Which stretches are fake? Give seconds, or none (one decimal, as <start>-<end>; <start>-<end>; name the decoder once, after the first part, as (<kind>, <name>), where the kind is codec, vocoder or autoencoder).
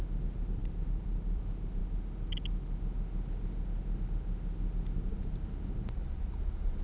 0.6-1.4 (vocoder, BigVGAN v2)